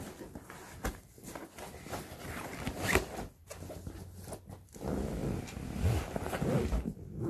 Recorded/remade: recorded